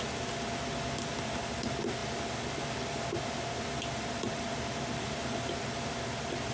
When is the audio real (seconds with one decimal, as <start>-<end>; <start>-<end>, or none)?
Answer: 0.0-6.5